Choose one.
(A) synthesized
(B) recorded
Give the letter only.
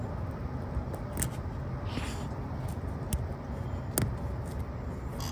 B